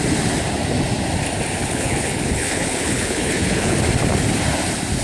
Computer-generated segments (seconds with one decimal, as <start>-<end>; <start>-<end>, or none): 1.6-3.8

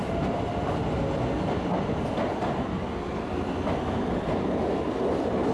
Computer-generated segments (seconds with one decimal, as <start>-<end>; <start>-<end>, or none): none